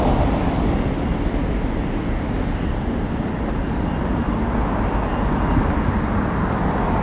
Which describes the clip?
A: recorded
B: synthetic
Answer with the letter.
A